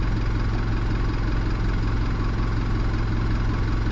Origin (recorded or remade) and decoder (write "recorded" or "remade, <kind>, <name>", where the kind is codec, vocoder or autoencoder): recorded